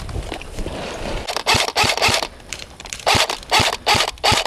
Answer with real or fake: fake